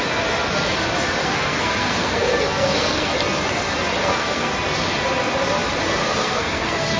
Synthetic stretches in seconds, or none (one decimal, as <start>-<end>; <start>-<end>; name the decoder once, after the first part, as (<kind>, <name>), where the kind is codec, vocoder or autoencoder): 1.2-3.1 (codec, SNAC); 4.0-4.5; 6.0-7.0